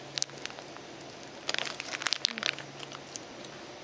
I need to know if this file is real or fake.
real